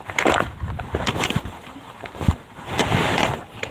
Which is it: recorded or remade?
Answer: remade